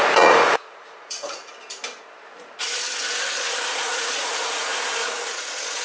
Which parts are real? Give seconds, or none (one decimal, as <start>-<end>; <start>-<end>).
1.4-3.7